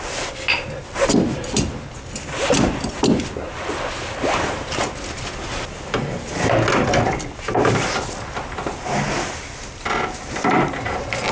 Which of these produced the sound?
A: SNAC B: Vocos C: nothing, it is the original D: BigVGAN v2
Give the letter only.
C